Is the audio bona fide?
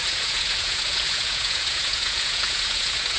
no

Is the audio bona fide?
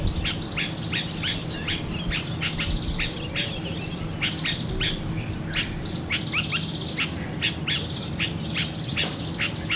yes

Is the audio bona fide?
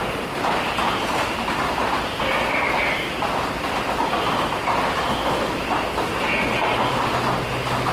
yes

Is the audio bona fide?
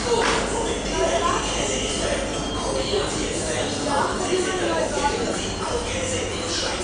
yes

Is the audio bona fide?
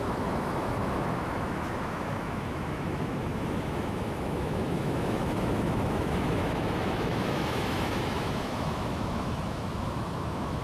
no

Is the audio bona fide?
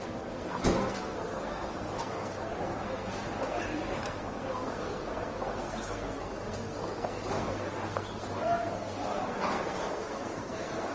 no